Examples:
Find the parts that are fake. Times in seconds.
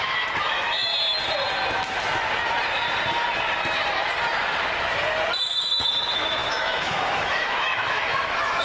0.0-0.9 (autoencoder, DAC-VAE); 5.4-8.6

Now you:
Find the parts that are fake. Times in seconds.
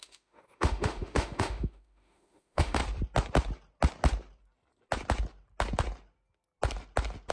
0.0-2.8 (autoencoder, DAC-VAE)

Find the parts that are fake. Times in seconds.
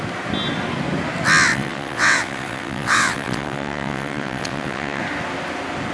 1.5-5.0 (vocoder, WaveNeXt)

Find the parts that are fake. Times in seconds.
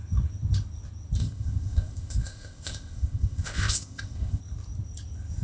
1.2-4.4 (codec, ZipCodec)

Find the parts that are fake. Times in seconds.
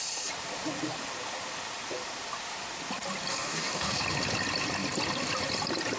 3.3-4.0 (codec, DAC)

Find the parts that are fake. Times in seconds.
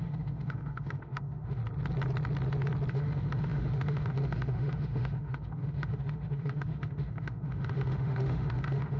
0.0-1.6 (autoencoder, DAC-VAE); 2.9-9.0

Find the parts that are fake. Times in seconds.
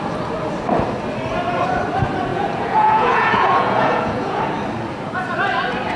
2.3-4.4 (vocoder, Vocos)